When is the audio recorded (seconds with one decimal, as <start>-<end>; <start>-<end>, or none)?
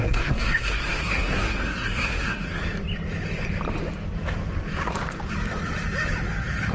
2.6-6.7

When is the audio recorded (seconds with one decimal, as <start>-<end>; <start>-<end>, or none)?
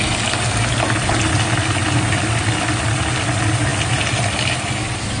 0.0-5.2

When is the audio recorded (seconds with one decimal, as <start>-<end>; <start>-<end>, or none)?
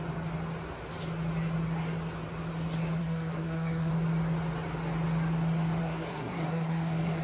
0.0-3.0; 3.9-5.8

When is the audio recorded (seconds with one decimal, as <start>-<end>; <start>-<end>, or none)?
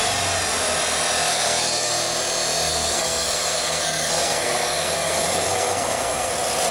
0.0-1.3; 1.9-2.7; 6.3-6.7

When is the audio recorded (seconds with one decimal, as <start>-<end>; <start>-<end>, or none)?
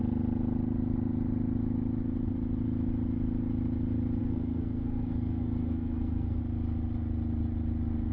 0.0-4.2; 6.4-8.1